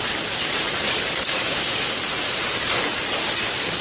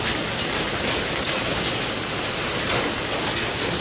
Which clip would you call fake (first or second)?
first